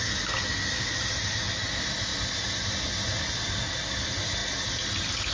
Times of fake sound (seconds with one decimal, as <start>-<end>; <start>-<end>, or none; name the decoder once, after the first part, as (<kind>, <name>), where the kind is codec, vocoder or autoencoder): none